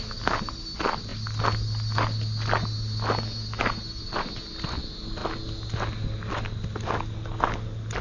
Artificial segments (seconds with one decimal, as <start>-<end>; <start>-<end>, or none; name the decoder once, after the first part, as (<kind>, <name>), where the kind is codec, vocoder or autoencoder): none

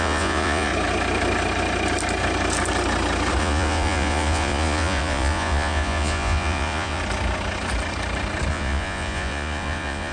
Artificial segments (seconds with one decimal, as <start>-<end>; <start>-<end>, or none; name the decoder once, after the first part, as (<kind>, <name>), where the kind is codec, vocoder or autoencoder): 0.0-0.7 (vocoder, Vocos); 3.4-7.0; 8.5-10.1

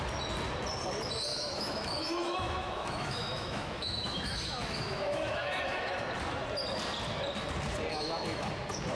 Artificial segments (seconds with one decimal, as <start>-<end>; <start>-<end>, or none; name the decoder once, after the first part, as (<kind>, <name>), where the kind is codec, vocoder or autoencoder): 1.3-6.0 (autoencoder, DAC-VAE); 7.9-8.5

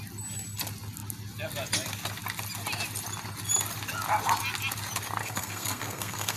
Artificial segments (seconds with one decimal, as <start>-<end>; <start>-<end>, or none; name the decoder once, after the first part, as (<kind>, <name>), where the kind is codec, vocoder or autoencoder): 5.2-6.4 (codec, SNAC)

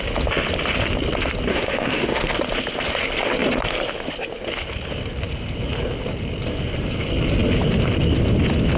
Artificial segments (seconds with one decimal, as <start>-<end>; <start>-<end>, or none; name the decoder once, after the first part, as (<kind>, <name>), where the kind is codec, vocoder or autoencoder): 1.5-2.3 (autoencoder, DAC-VAE)

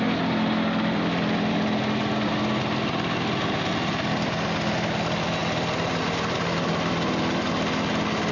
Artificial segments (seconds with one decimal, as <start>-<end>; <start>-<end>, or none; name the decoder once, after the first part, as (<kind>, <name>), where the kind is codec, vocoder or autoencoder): none

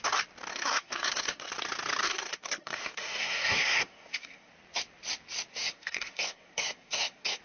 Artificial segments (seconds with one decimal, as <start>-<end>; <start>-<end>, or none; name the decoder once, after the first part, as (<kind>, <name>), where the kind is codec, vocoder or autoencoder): 0.5-1.5 (codec, SNAC); 2.0-4.5; 5.5-7.4

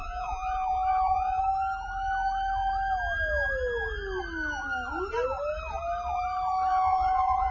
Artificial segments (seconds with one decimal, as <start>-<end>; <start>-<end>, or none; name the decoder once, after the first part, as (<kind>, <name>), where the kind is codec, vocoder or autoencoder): 0.0-1.4 (vocoder, Vocos); 6.7-7.5